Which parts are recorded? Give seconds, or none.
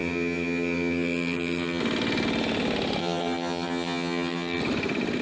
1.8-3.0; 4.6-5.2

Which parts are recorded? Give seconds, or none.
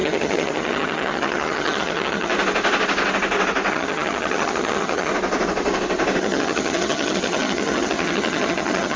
2.3-3.7; 5.1-6.2